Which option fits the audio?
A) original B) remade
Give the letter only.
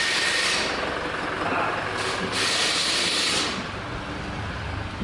A